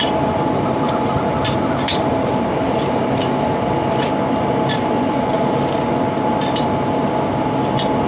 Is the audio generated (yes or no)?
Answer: no